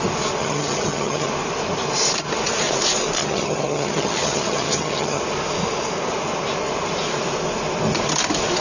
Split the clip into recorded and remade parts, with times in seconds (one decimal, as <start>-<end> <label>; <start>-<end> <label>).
0.0-0.4 recorded; 0.4-1.3 remade; 1.3-3.2 recorded; 3.2-5.2 remade; 5.2-8.6 recorded